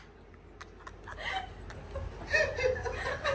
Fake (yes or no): no